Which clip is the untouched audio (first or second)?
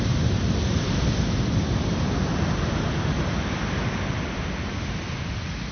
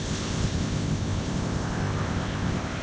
first